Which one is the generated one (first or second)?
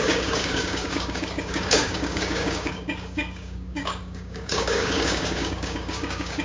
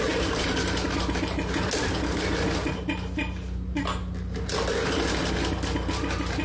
first